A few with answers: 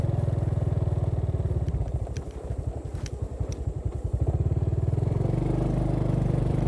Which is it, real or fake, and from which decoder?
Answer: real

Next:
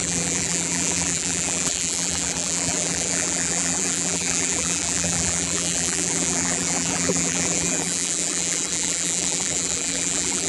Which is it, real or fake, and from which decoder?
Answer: fake, vocoder, BigVGAN v2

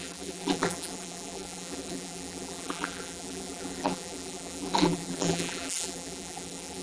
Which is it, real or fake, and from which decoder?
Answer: fake, vocoder, BigVGAN v2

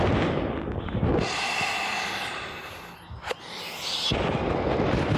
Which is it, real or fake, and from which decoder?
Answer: real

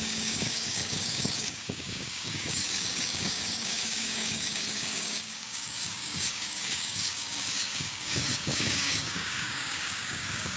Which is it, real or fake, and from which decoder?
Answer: fake, codec, DAC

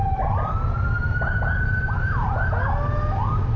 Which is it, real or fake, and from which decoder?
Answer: real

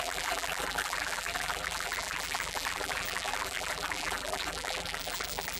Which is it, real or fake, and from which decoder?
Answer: fake, vocoder, BigVGAN v2